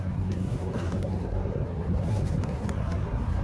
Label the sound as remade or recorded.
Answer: remade